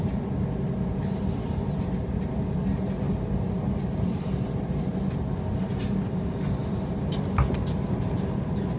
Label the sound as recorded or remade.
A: recorded